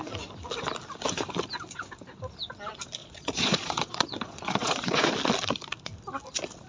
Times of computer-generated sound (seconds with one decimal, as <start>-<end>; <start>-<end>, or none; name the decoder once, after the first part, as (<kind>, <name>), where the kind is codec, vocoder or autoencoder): 3.0-5.1 (vocoder, Vocos)